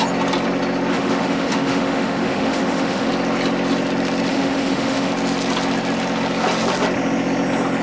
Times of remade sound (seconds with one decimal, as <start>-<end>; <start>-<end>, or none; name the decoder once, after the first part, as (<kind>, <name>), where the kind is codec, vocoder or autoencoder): 0.9-3.1 (autoencoder, DAC-VAE); 4.3-5.1